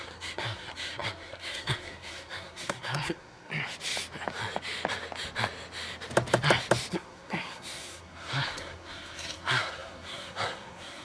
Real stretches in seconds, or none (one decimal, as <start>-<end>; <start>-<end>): 3.5-6.9